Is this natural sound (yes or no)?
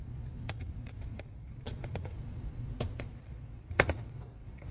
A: no